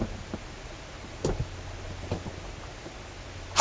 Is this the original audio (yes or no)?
yes